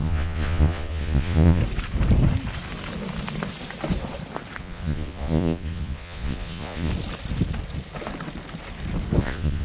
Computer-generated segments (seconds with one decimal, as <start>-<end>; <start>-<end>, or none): 0.0-1.6; 4.6-6.9; 9.2-9.6